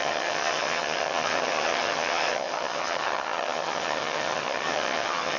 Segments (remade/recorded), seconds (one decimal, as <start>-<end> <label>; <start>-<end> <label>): 0.0-5.4 remade